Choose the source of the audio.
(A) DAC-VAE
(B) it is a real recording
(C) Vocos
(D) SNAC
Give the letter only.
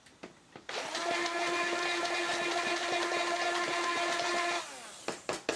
B